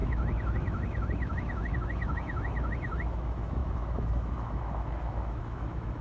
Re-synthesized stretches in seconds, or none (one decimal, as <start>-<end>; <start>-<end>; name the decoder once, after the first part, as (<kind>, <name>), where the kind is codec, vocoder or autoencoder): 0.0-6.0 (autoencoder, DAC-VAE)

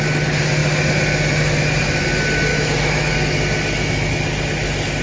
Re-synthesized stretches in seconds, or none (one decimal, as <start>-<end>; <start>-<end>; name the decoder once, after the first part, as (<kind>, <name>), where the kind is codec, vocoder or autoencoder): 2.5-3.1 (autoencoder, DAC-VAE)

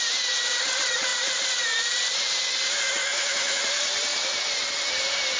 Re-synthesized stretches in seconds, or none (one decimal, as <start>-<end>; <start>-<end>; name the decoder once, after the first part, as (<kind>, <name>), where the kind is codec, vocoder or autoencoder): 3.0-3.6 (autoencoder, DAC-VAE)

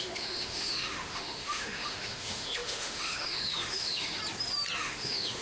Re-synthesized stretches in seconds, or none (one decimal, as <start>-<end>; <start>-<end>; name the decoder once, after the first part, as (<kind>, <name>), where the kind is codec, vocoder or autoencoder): 0.0-4.2 (autoencoder, DAC-VAE); 4.8-5.4

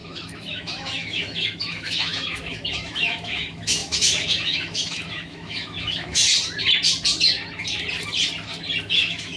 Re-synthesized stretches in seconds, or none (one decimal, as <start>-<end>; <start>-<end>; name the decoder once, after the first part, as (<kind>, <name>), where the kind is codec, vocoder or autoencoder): 0.0-6.2 (autoencoder, DAC-VAE); 8.8-9.4

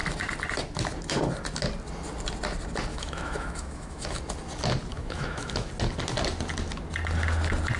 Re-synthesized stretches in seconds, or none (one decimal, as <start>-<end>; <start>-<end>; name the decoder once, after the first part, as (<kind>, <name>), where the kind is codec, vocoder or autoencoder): 2.9-4.2 (autoencoder, DAC-VAE); 4.9-5.7

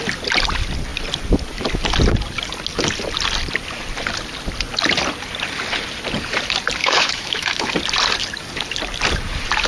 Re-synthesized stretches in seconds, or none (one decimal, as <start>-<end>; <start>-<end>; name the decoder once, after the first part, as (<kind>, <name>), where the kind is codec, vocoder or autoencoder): 6.8-7.7 (autoencoder, DAC-VAE)

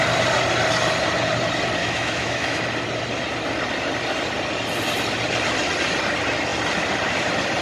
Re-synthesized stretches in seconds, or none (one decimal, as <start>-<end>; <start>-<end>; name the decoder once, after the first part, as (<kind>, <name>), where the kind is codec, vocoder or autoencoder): 1.8-2.6 (autoencoder, DAC-VAE)